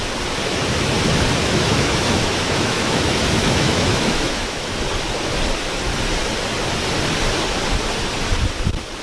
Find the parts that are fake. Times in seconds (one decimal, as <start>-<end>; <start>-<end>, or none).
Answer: 1.4-4.8